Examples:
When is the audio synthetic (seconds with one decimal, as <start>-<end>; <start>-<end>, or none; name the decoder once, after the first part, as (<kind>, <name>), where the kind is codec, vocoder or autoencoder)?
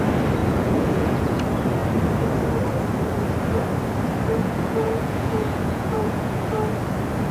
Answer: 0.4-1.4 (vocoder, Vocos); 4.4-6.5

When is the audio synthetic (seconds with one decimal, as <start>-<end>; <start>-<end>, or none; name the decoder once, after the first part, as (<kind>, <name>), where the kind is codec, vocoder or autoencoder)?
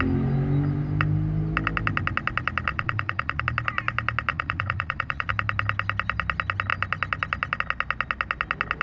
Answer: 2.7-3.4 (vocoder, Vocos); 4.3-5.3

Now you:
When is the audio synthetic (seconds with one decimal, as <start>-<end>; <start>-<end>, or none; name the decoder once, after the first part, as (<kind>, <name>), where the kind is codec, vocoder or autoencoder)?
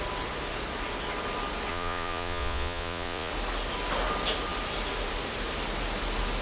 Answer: 1.7-3.3 (vocoder, Vocos)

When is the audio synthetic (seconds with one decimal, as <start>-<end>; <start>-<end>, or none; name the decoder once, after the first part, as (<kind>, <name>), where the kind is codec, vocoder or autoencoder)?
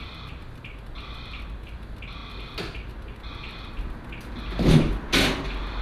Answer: none